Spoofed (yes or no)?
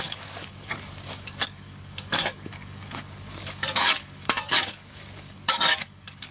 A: yes